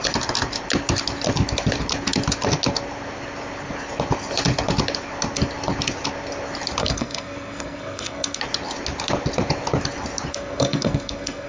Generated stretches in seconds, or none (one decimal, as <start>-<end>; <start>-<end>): 6.8-8.4; 10.3-11.5